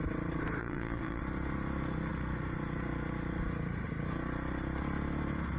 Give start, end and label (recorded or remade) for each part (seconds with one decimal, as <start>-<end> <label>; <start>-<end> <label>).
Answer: 0.0-0.6 recorded; 0.6-1.2 remade; 1.2-5.6 recorded